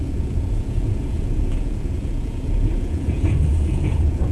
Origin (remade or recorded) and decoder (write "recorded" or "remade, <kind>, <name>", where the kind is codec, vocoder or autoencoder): remade, vocoder, Vocos